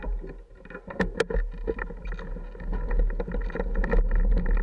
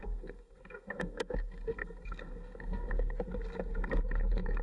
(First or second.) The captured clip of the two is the first